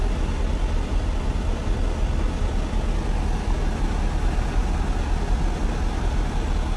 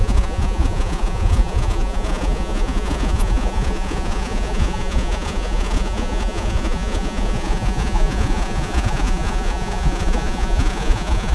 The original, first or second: first